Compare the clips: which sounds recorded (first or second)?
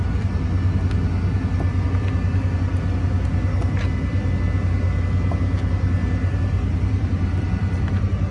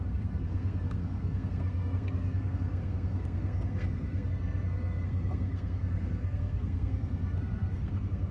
first